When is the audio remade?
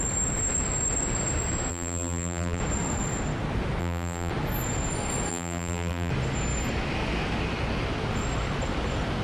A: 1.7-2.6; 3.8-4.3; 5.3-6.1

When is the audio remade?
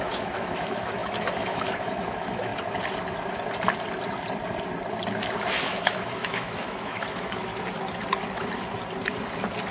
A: 0.0-2.5; 5.6-7.5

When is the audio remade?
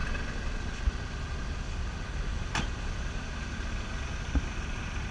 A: none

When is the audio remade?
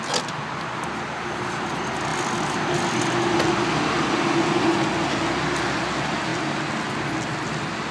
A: none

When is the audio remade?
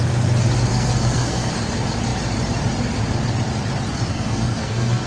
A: 0.7-1.5; 4.1-5.1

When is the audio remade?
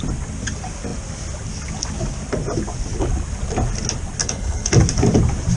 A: 4.2-4.7